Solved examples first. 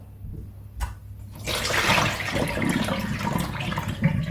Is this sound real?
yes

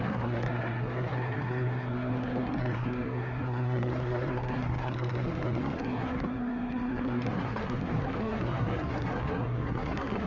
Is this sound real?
no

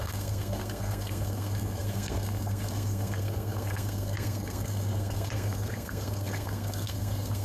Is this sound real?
no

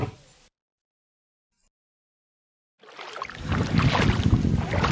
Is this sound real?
yes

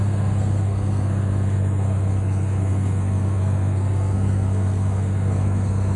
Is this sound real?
no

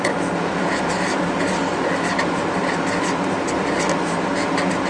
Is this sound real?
yes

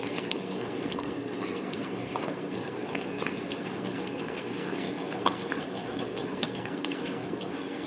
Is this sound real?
no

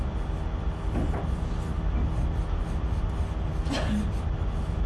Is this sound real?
yes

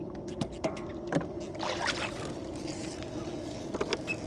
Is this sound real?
yes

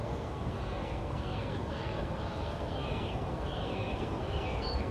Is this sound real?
no